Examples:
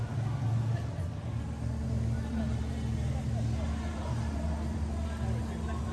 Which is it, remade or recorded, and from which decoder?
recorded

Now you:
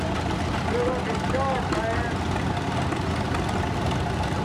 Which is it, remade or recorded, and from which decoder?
recorded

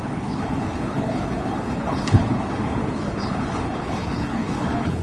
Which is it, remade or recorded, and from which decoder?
remade, codec, HILCodec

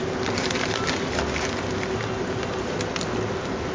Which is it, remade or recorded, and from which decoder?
recorded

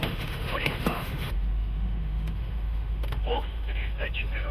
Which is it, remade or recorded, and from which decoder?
remade, autoencoder, DAC-VAE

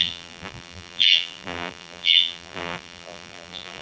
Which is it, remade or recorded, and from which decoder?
remade, vocoder, BigVGAN v2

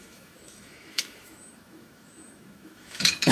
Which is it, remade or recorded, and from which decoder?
remade, autoencoder, DAC-VAE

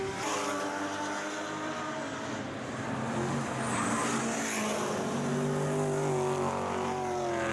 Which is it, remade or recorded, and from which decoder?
recorded